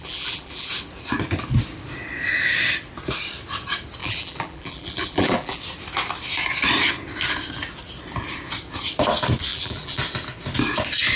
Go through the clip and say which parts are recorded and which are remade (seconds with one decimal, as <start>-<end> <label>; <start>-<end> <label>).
0.0-0.7 remade; 0.7-4.0 recorded; 4.0-5.6 remade; 5.6-9.5 recorded; 9.5-10.0 remade; 10.0-11.2 recorded